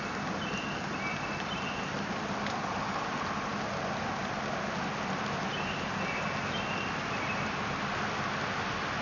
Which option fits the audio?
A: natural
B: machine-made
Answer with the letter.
A